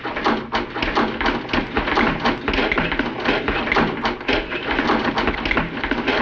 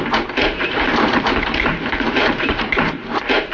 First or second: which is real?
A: first